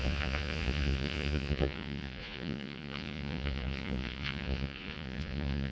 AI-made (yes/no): yes